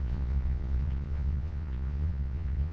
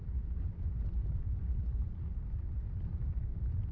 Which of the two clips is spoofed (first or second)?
first